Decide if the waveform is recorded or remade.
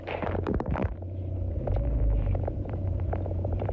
remade